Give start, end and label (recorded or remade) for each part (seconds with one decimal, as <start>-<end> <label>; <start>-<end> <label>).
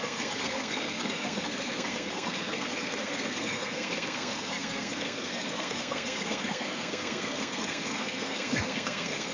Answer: 0.0-9.3 remade